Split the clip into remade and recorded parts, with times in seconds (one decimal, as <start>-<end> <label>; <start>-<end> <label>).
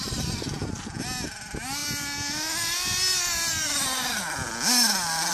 0.0-5.3 recorded